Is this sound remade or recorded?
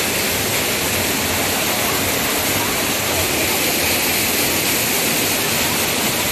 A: recorded